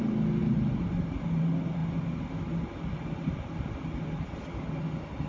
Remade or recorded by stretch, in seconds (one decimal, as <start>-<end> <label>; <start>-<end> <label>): 0.0-5.3 recorded